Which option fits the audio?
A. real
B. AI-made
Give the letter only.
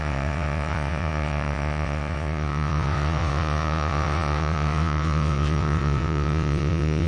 B